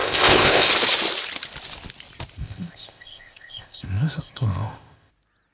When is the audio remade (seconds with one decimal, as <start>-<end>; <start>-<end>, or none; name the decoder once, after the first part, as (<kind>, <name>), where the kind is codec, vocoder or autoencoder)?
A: 0.0-0.7 (codec, ZipCodec); 2.4-5.1